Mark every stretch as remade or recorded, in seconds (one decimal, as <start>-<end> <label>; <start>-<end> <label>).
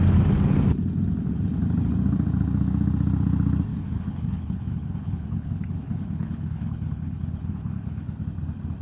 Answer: 0.0-3.7 recorded; 3.7-8.2 remade; 8.2-8.8 recorded